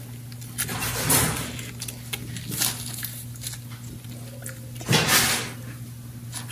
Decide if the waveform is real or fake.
real